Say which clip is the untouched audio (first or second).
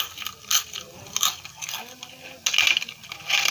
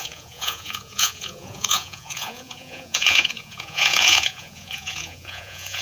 first